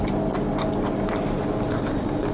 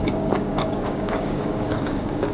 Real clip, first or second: first